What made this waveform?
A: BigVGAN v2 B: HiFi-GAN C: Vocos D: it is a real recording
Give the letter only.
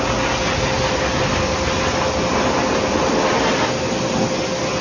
D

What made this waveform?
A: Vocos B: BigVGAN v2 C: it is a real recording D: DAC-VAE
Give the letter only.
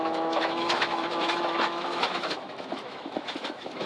D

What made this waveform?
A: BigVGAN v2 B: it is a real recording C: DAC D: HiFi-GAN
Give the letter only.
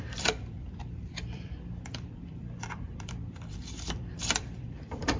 A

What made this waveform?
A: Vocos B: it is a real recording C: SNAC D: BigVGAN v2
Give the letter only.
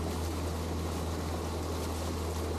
B